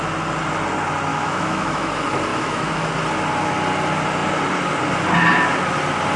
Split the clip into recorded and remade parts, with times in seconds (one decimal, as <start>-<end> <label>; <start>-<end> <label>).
0.0-1.1 recorded; 1.1-1.9 remade; 1.9-2.3 recorded; 2.3-2.9 remade; 2.9-6.2 recorded